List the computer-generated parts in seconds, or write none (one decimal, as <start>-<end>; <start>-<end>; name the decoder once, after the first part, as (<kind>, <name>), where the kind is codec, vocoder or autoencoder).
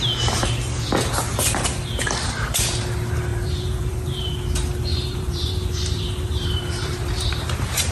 3.3-4.3 (vocoder, BigVGAN v2); 4.9-7.9